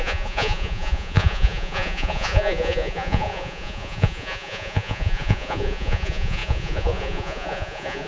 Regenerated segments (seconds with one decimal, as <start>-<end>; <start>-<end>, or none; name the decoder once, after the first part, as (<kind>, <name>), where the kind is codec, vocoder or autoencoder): 0.0-8.1 (vocoder, Vocos)

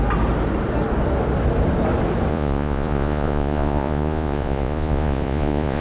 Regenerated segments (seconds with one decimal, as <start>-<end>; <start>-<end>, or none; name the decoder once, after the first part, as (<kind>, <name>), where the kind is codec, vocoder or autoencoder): 2.3-5.8 (vocoder, Vocos)